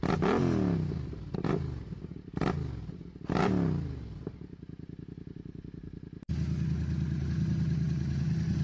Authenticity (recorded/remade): recorded